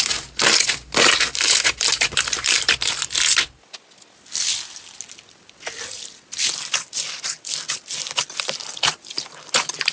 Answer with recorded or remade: recorded